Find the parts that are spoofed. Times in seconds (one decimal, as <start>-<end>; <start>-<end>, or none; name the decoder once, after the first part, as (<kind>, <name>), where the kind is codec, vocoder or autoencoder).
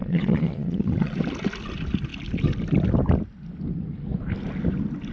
0.0-1.1 (vocoder, Vocos)